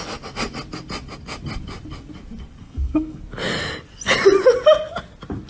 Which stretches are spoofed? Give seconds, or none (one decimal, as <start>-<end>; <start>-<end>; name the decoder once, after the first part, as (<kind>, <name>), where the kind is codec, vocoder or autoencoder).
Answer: 2.6-3.2 (codec, SNAC)